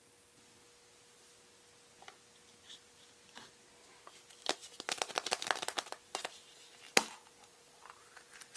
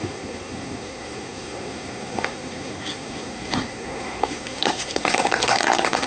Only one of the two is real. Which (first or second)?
first